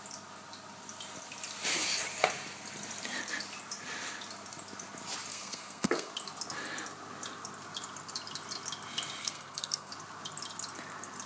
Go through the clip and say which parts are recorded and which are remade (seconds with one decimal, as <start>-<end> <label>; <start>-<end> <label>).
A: 0.0-5.3 recorded; 5.3-6.1 remade; 6.1-9.2 recorded; 9.2-9.9 remade; 9.9-11.3 recorded